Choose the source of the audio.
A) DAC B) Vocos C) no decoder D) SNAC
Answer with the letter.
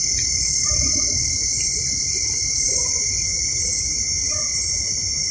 C